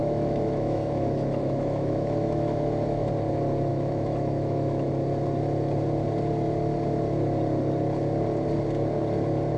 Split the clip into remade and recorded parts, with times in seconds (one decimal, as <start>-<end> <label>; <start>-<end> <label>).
0.0-3.1 remade; 3.1-3.7 recorded; 3.7-4.9 remade; 4.9-9.6 recorded